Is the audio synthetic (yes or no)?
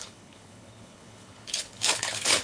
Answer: yes